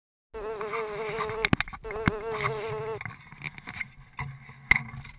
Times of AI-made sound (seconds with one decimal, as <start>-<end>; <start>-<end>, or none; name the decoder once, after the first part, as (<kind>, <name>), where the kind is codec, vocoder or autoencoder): none